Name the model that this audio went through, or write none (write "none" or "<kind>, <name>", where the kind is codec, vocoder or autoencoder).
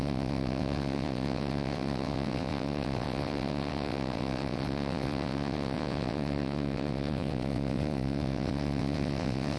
vocoder, WaveNeXt